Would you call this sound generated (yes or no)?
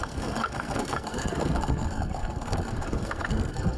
yes